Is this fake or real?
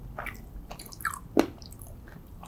real